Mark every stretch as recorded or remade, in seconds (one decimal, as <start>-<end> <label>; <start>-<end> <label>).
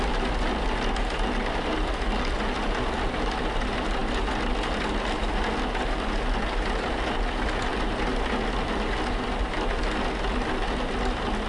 0.0-11.5 recorded